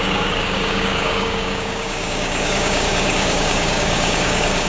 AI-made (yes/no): yes